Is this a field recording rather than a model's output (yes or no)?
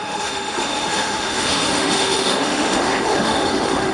no